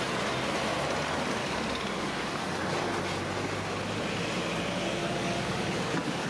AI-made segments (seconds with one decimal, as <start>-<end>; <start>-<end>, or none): 1.4-2.4; 5.0-6.3